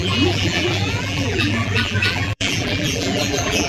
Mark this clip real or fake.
fake